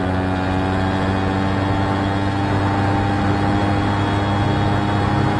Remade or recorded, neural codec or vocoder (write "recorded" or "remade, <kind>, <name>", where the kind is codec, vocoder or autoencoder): recorded